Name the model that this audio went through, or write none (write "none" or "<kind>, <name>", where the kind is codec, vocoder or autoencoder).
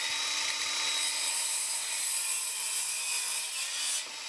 none